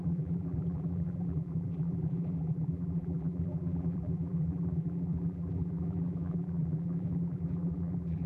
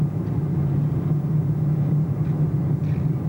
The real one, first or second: second